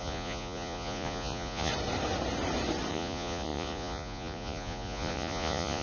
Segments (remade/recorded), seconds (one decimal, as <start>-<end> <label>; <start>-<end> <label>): 0.0-1.7 remade; 1.7-2.9 recorded; 2.9-5.8 remade